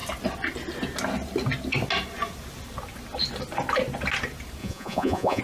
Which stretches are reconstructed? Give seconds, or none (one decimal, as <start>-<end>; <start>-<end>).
4.6-5.4

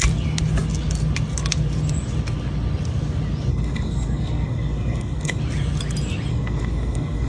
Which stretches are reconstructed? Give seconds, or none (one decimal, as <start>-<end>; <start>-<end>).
3.5-5.4; 6.3-7.3